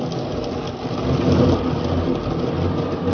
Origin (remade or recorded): recorded